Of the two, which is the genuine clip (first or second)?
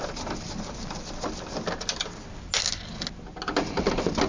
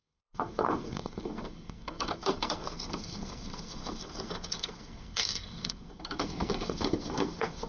first